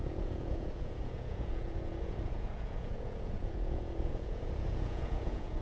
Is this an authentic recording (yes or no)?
no